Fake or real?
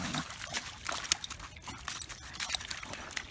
real